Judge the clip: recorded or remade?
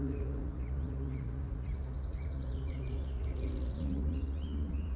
remade